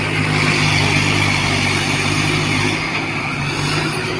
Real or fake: real